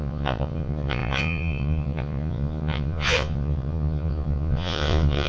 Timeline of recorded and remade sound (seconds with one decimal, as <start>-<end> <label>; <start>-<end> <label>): 0.0-5.3 remade